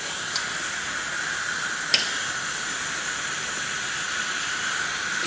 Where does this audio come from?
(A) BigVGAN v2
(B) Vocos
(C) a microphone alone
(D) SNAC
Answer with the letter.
C